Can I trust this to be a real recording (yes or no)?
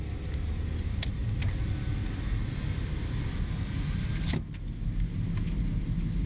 yes